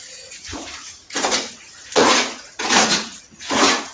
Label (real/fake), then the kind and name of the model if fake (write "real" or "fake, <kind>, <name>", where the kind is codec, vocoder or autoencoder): fake, vocoder, Vocos